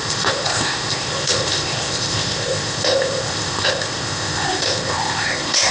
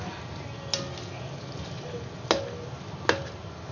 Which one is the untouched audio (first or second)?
second